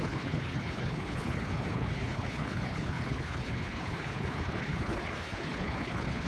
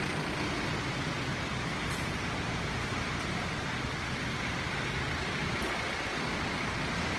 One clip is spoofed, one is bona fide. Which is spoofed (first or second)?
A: first